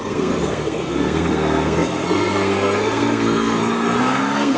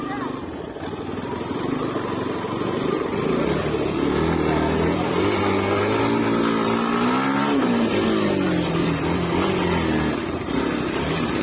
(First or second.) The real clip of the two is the second